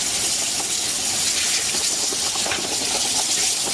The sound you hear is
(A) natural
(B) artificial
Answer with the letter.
A